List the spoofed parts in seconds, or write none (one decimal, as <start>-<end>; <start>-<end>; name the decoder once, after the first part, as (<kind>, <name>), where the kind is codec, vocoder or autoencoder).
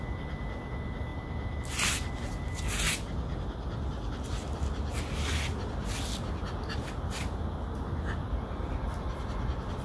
none